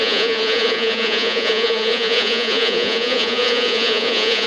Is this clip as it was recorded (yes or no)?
no